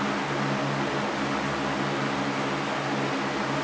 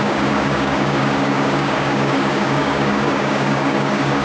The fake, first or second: second